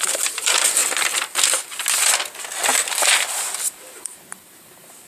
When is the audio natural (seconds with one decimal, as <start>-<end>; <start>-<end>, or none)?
0.8-3.0